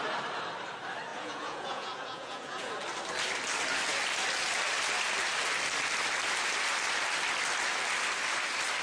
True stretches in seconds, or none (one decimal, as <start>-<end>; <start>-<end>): 0.0-1.1; 2.7-8.8